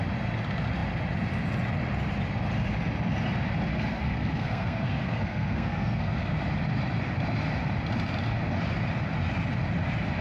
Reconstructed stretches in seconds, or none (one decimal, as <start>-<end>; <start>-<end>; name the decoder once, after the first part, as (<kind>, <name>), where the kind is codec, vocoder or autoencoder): 3.7-6.4 (codec, SNAC)